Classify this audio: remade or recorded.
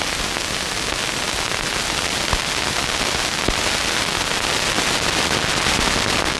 recorded